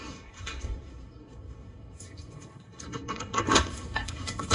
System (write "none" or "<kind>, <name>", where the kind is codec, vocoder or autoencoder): codec, SNAC